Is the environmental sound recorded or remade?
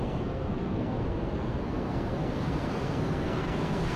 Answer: remade